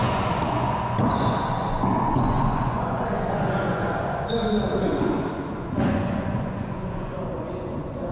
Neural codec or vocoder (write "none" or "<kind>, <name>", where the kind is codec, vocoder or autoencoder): vocoder, Vocos